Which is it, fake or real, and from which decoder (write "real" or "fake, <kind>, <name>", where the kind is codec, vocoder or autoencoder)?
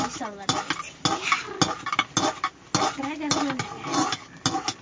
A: real